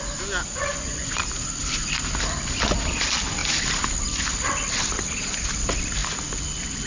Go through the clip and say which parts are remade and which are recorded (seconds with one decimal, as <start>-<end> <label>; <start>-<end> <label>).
0.0-0.6 recorded; 0.6-1.2 remade; 1.2-6.9 recorded